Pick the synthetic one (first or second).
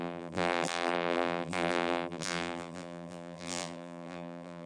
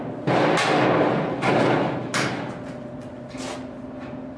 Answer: first